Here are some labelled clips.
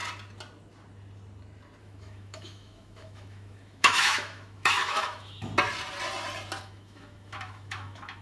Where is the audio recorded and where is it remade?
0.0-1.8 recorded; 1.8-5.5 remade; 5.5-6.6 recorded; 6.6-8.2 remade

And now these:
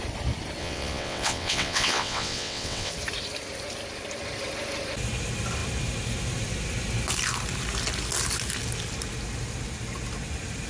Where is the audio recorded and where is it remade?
0.0-0.6 recorded; 0.6-2.9 remade; 2.9-10.7 recorded

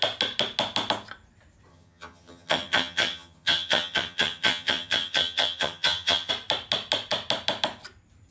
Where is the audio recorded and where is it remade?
0.0-1.7 recorded; 1.7-6.3 remade; 6.3-8.3 recorded

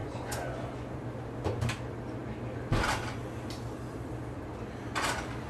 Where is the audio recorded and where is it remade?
0.0-1.0 remade; 1.0-5.5 recorded